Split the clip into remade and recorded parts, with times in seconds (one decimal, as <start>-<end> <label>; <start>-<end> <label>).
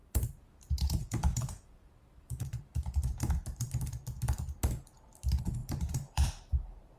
0.0-3.3 remade; 3.3-5.6 recorded; 5.6-7.0 remade